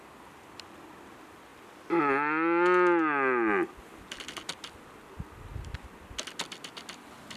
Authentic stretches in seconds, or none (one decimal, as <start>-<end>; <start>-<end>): 0.0-7.4